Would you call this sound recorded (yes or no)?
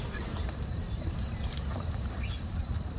no